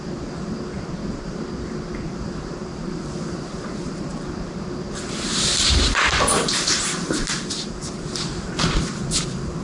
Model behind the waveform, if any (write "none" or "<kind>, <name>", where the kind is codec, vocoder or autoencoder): vocoder, BigVGAN v2